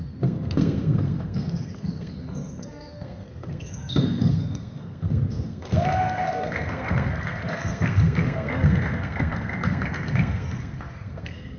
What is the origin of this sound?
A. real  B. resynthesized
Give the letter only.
B